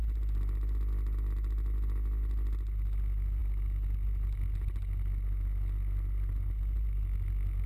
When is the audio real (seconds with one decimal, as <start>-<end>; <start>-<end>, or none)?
0.0-7.7